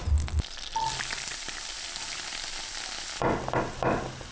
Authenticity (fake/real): real